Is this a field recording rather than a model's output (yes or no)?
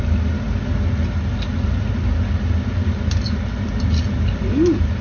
yes